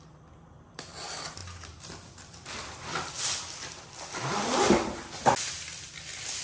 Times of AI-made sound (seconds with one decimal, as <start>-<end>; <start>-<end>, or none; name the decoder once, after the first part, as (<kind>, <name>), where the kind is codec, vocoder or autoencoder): none

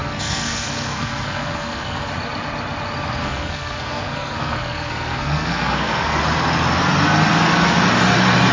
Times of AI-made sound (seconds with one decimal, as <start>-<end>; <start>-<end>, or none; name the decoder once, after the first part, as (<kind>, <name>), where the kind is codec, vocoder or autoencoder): 0.0-2.1 (codec, SNAC); 3.2-6.2

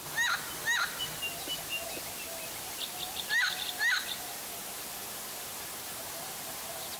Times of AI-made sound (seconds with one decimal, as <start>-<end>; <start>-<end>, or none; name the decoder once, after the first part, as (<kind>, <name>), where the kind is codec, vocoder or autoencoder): none

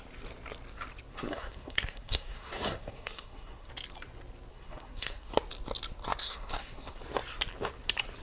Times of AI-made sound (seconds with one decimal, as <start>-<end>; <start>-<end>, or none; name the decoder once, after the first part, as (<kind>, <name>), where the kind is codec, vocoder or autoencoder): 1.1-3.7 (codec, SNAC); 4.5-5.3; 6.2-7.0

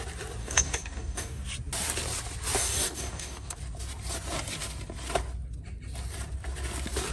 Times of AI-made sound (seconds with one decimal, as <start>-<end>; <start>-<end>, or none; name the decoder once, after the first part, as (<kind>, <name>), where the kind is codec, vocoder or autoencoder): 0.4-1.4 (codec, DAC); 2.6-3.6

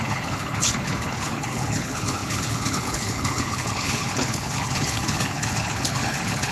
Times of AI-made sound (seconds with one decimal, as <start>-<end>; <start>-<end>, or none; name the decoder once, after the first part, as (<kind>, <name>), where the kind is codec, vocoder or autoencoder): 0.0-6.5 (codec, HILCodec)